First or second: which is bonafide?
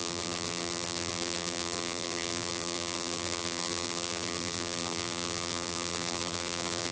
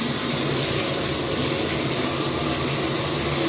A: second